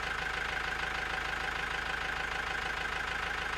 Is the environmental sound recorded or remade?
recorded